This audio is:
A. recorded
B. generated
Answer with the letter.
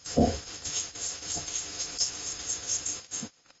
B